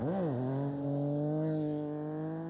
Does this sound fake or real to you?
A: real